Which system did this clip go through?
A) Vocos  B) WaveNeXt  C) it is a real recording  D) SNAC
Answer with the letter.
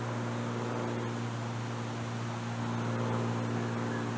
C